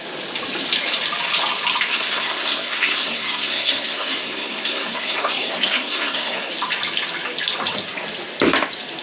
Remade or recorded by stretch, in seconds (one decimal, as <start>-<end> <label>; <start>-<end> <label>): 0.0-1.9 recorded; 1.9-6.5 remade; 6.5-9.0 recorded